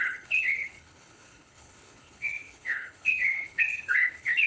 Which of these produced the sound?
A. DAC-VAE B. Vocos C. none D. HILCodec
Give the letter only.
D